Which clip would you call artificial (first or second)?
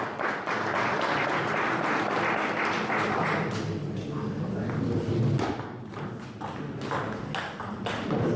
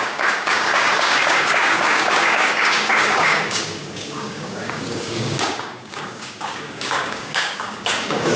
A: second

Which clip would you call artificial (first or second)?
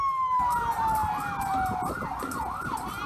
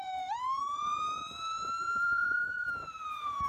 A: second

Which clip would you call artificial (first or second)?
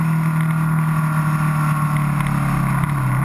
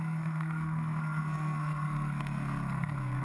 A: second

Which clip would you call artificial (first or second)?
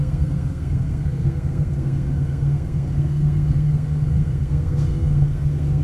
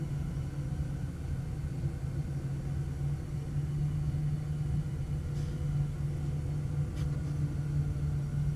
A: first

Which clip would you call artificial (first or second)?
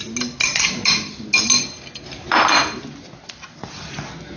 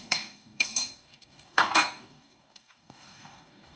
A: second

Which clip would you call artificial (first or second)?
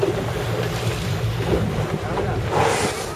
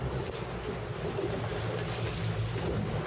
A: first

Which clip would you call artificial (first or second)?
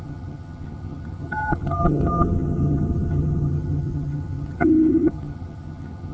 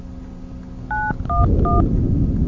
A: first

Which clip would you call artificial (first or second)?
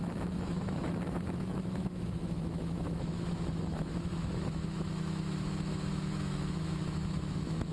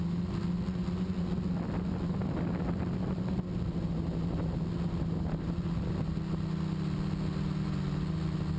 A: first